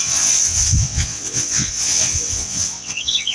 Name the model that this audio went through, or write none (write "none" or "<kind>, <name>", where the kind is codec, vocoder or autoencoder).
vocoder, WaveNeXt